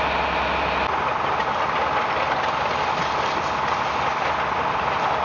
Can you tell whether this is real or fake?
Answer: real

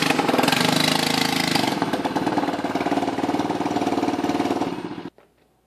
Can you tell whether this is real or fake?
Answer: real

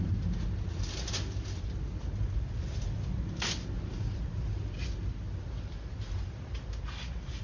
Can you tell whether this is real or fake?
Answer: real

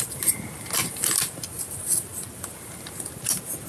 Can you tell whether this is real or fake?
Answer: real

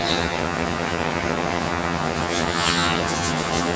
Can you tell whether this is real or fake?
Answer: fake